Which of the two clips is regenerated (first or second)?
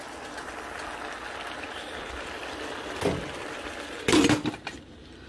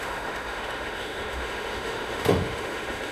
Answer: second